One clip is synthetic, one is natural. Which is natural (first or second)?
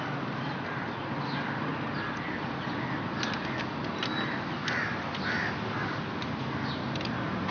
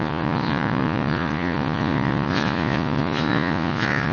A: first